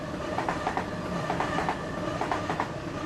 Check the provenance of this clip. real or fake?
real